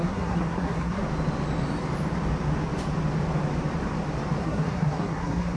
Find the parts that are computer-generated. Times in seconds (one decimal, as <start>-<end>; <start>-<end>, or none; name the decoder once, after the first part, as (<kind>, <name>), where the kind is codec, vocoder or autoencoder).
0.0-1.0 (codec, SNAC); 4.4-5.6